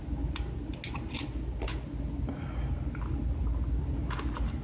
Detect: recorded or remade recorded